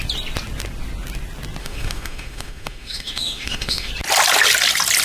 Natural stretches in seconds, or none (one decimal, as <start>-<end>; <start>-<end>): 0.0-1.6; 3.9-5.0